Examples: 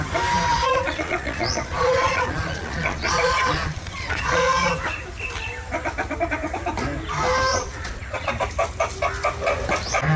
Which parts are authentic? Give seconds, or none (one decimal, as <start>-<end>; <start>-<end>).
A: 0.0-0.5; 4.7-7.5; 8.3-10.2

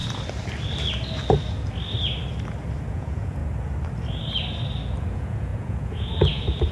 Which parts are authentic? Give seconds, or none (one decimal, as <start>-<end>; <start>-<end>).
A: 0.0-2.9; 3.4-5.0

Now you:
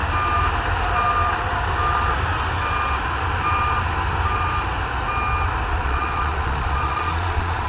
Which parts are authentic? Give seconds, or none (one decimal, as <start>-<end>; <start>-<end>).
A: 0.0-5.7

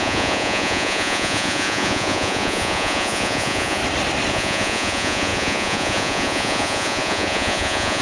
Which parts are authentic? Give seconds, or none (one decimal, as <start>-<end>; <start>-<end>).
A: 3.8-4.3

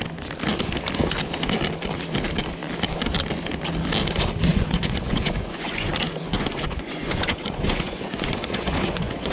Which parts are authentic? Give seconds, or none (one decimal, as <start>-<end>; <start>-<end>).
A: 0.0-4.5

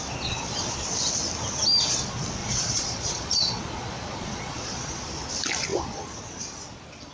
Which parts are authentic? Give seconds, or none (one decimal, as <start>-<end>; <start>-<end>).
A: 0.0-2.4; 5.0-7.1

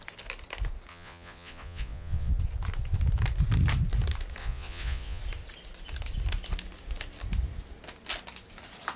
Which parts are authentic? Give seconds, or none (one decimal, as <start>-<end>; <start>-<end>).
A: 0.0-0.9; 2.3-4.4; 5.2-9.0

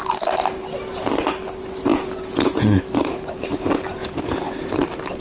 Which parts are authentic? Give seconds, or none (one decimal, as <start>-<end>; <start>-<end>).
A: 0.0-1.9; 2.8-3.9; 4.7-5.2